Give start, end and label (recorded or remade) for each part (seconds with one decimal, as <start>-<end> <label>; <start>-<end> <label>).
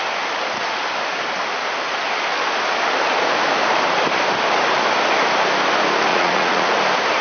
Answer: 0.0-6.1 recorded; 6.1-6.7 remade; 6.7-7.2 recorded